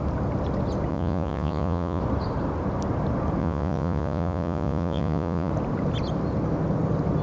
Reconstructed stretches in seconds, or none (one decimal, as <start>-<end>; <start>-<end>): 0.9-2.0; 3.4-5.5